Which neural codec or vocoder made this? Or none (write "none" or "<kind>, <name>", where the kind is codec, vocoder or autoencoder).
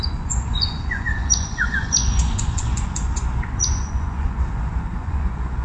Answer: vocoder, Vocos